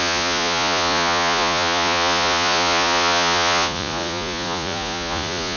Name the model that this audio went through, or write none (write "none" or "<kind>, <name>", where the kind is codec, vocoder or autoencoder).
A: vocoder, Vocos